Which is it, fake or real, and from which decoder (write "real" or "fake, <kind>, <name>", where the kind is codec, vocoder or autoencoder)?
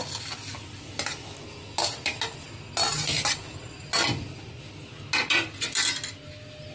real